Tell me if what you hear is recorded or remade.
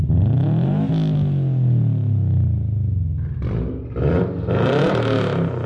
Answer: recorded